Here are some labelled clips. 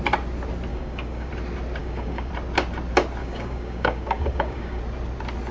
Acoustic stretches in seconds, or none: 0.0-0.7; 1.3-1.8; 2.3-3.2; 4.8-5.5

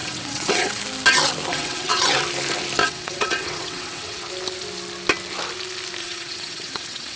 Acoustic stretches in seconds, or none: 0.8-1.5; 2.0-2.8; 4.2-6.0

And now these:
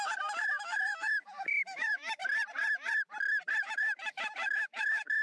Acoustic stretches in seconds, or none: 2.2-3.6

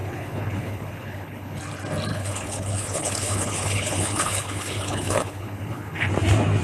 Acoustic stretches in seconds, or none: 1.6-2.1; 6.1-6.6